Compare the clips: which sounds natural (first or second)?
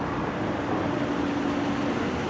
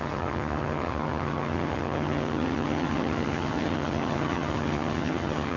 first